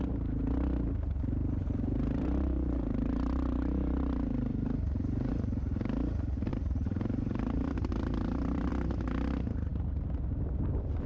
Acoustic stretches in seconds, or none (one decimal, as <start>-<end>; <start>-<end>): 0.0-1.4; 5.3-6.5; 8.7-11.1

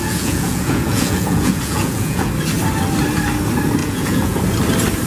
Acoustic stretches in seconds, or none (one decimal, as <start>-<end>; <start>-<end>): 2.3-3.8; 4.4-5.1

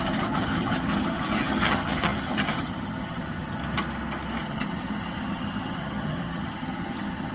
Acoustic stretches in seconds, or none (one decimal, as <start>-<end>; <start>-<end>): 3.6-4.4

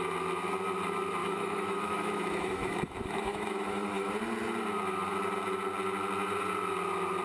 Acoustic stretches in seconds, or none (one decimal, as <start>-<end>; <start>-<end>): 0.0-1.2; 4.1-7.2

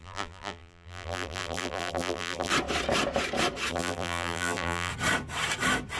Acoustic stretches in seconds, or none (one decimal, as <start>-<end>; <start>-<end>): 2.5-3.7; 4.9-6.0